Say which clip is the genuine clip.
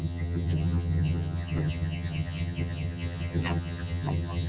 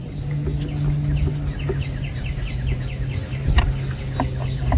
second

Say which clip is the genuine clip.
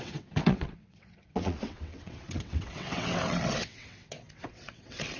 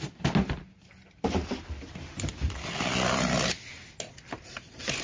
second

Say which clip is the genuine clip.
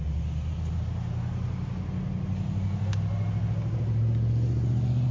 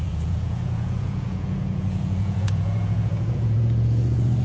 first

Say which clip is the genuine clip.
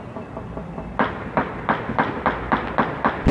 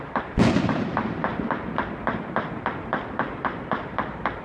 first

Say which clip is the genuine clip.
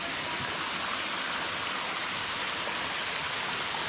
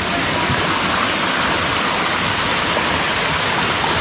first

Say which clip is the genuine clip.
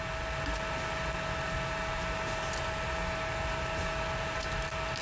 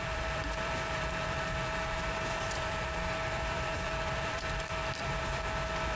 first